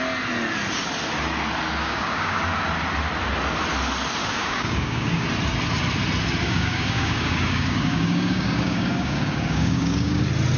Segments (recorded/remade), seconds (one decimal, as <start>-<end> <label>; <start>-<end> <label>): 0.0-1.8 recorded; 1.8-2.4 remade; 2.4-4.2 recorded; 4.2-5.3 remade; 5.3-6.4 recorded; 6.4-10.2 remade; 10.2-10.6 recorded